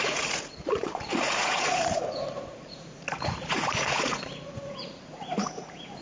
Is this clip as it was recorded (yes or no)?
no